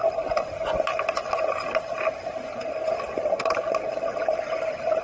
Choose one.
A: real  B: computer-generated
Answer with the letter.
A